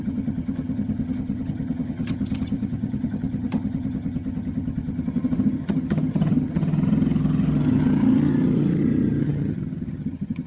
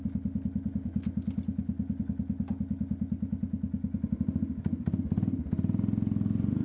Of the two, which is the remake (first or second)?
first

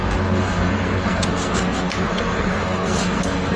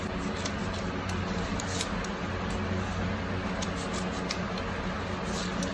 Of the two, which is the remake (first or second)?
first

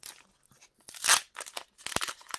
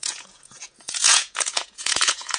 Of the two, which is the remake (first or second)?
second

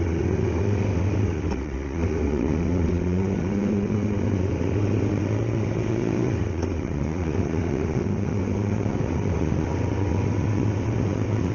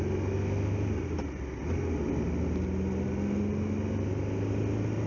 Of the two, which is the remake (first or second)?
first